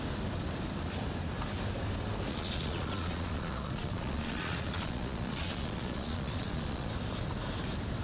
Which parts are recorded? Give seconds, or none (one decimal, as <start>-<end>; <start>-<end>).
0.0-2.3; 6.9-8.0